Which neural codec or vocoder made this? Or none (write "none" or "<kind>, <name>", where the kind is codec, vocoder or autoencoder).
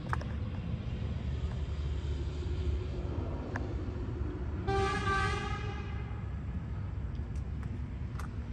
none